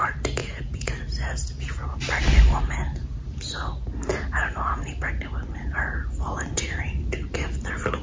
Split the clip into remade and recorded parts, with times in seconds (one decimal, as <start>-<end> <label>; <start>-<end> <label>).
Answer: 0.0-0.4 recorded; 0.4-0.9 remade; 0.9-8.0 recorded